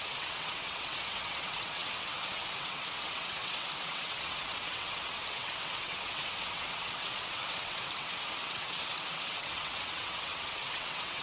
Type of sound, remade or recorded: remade